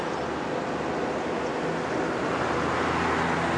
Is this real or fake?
real